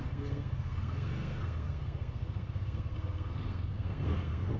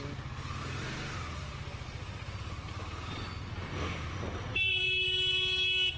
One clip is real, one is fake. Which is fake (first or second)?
first